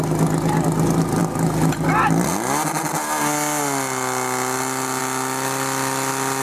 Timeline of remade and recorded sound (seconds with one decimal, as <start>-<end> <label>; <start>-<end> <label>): 0.0-6.4 recorded